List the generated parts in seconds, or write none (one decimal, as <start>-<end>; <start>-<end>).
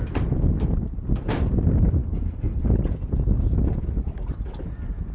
2.0-2.6